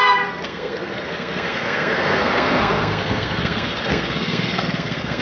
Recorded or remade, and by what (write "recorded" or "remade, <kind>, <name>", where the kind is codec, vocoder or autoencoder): remade, codec, SNAC